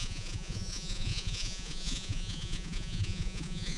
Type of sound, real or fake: fake